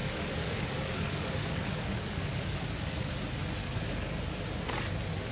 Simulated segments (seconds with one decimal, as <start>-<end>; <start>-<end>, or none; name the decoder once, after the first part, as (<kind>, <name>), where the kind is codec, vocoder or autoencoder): 0.0-3.1 (codec, DAC); 3.6-4.4